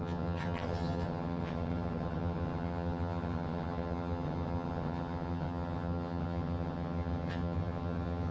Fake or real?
fake